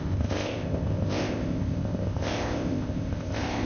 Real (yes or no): no